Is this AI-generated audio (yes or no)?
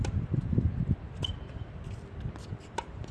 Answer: no